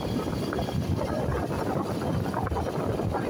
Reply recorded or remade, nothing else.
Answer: recorded